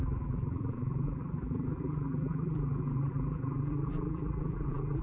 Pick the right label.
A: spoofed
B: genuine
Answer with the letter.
A